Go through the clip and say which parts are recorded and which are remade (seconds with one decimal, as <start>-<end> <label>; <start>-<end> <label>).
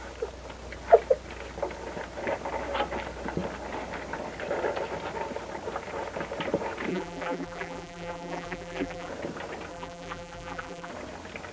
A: 0.0-6.9 recorded; 6.9-9.1 remade; 9.1-9.7 recorded; 9.7-10.9 remade; 10.9-11.5 recorded